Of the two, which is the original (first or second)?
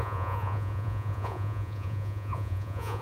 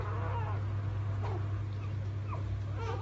second